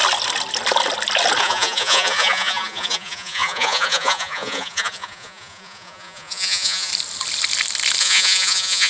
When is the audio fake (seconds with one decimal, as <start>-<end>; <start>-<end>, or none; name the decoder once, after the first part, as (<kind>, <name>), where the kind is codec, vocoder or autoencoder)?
1.4-6.9 (vocoder, Vocos); 8.0-8.9